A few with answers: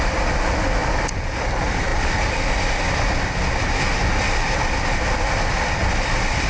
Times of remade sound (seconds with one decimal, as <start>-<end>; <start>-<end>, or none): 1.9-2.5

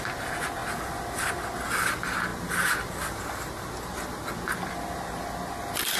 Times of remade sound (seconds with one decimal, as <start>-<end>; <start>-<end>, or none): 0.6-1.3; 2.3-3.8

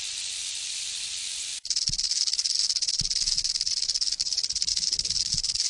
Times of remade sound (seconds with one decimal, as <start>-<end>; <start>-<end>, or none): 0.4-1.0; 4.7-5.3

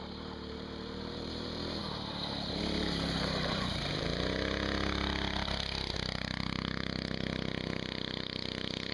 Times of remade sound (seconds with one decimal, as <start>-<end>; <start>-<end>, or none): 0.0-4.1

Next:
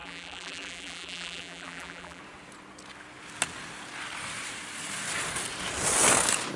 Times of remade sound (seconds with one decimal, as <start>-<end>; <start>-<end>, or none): 0.0-2.2